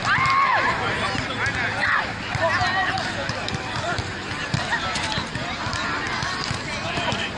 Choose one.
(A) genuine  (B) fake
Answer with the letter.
A